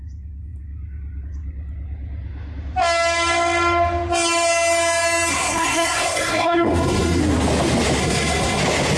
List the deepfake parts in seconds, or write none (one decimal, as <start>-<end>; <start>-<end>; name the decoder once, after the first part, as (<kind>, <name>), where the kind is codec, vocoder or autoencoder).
5.3-7.2 (codec, SNAC); 8.0-8.6